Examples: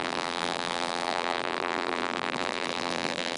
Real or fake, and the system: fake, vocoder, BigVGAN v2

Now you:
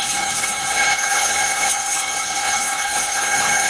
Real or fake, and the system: fake, codec, HILCodec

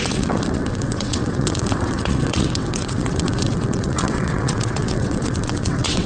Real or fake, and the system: fake, vocoder, WaveNeXt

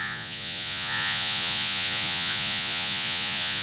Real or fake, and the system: fake, vocoder, Vocos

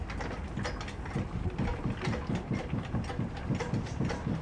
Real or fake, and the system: real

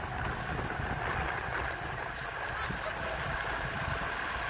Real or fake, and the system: real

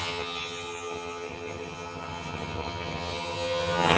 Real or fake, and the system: fake, vocoder, HiFi-GAN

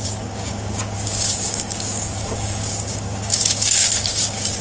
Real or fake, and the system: fake, codec, DAC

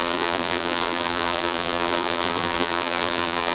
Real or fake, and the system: fake, vocoder, BigVGAN v2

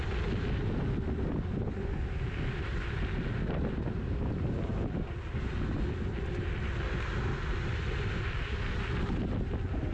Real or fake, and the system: real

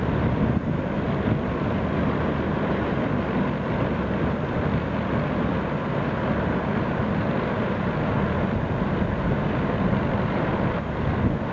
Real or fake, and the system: real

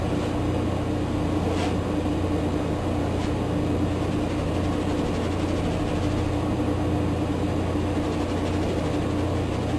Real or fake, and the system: real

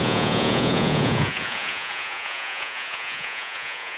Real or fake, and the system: fake, vocoder, Vocos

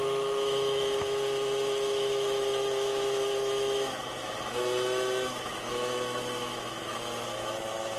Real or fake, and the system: fake, autoencoder, DAC-VAE